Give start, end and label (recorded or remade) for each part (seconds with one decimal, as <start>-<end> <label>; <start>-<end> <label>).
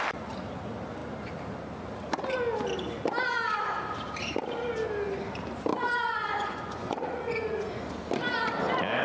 0.0-5.7 recorded; 5.7-7.9 remade; 7.9-9.0 recorded